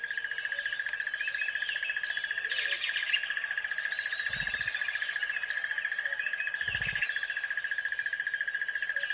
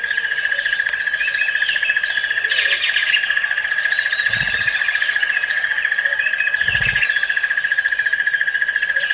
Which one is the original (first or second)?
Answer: first